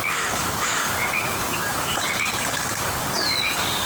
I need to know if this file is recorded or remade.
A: remade